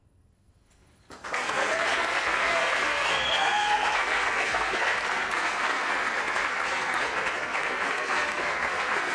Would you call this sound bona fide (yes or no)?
no